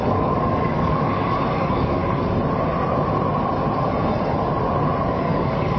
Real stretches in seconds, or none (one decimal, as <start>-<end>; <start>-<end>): 2.0-5.1